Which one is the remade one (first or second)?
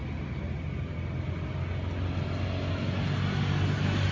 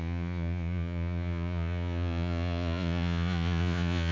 second